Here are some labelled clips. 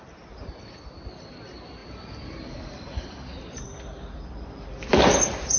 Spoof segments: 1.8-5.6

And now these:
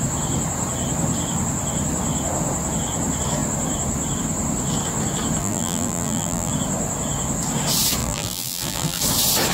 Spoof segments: 5.4-6.5; 8.0-9.0

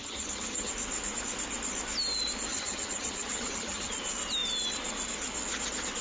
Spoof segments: 0.0-0.7; 2.5-3.9

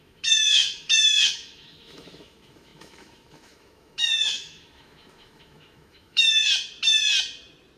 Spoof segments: 0.0-6.4